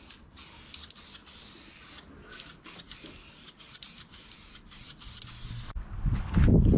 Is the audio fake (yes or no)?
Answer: no